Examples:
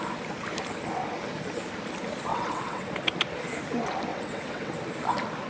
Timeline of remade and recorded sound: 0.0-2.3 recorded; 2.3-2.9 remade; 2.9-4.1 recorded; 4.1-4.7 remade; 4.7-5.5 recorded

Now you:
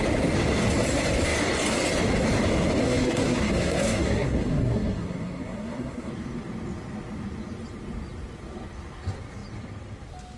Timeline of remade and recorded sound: 0.0-2.8 recorded; 2.8-6.1 remade; 6.1-10.4 recorded

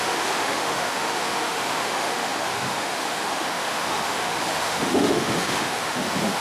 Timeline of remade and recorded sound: 0.0-6.4 remade